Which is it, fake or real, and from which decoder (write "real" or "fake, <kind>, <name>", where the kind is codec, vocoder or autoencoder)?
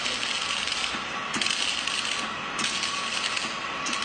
real